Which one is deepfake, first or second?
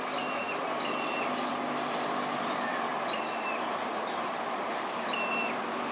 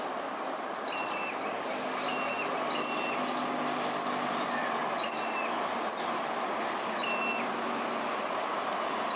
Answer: first